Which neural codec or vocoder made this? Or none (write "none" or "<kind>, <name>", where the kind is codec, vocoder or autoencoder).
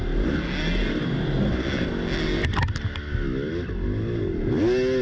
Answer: none